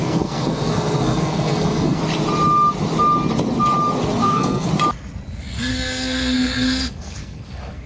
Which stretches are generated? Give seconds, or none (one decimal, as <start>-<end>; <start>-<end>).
0.0-2.0; 4.2-4.7; 5.7-7.9